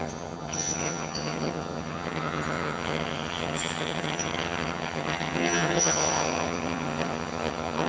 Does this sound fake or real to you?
fake